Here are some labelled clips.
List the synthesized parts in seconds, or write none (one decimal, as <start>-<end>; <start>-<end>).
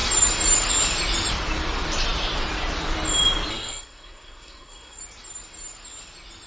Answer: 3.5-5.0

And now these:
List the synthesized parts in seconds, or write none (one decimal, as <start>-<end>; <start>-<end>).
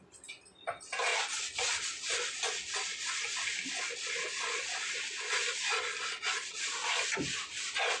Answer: none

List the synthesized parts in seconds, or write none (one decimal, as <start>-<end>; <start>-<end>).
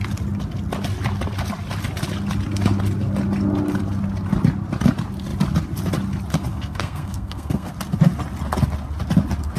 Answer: 6.5-7.7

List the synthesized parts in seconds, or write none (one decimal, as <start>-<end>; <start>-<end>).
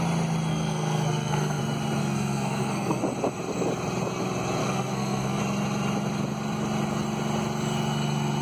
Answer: 0.5-1.6; 2.0-3.0; 4.6-5.4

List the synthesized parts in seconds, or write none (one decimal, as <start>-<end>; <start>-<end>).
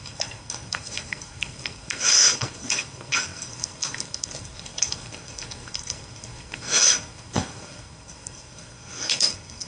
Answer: 0.0-9.7